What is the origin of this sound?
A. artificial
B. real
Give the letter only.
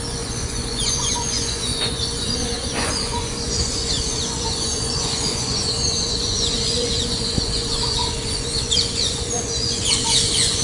A